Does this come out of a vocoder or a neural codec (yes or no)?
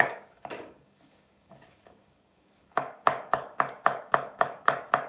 yes